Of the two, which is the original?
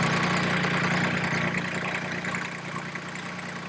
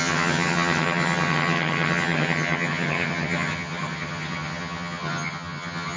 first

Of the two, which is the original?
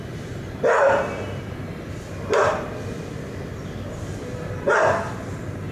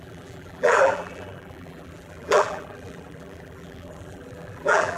first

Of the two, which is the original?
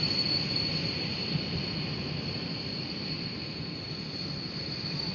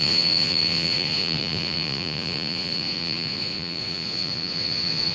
first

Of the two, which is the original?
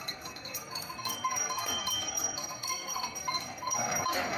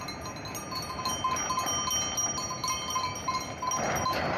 second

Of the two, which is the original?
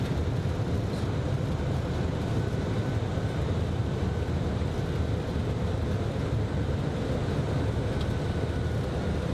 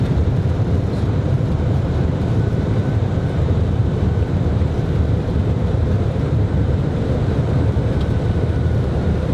first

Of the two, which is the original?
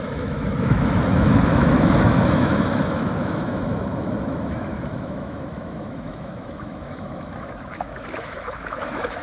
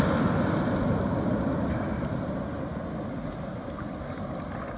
second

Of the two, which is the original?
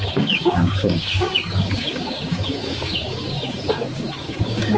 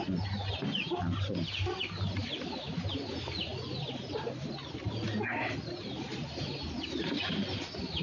second